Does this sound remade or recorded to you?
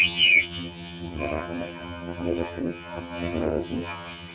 remade